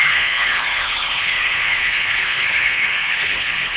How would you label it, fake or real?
fake